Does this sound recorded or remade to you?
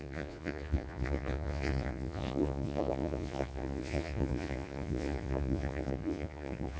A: remade